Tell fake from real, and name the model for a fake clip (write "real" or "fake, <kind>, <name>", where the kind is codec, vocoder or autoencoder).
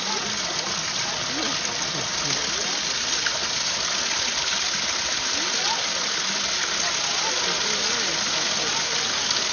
real